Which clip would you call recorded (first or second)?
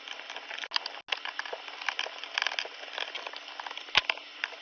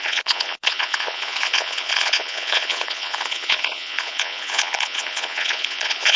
first